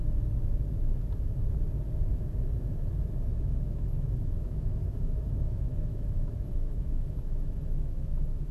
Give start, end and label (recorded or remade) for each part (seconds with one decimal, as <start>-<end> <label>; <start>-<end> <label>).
0.0-3.3 recorded; 3.3-8.5 remade